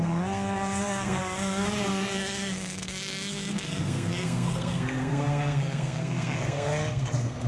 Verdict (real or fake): fake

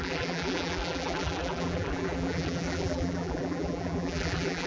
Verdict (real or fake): fake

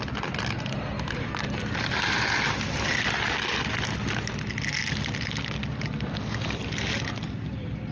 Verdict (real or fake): real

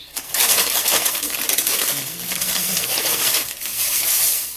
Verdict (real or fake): fake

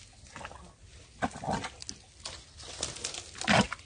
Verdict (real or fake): real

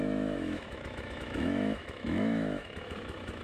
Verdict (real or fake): fake